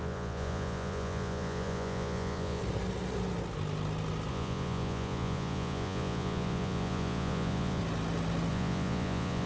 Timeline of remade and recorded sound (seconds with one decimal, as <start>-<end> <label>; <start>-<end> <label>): 0.0-2.6 remade; 2.6-4.3 recorded; 4.3-7.8 remade; 7.8-8.5 recorded; 8.5-9.5 remade